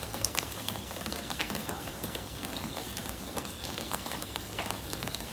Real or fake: fake